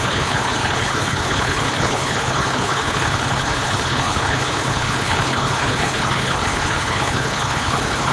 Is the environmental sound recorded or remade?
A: remade